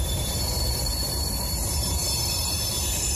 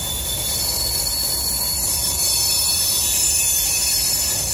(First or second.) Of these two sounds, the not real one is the first